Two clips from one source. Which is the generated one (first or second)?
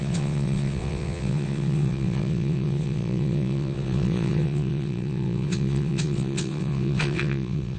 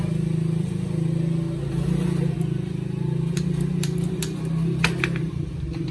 first